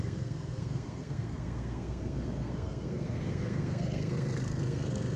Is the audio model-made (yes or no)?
yes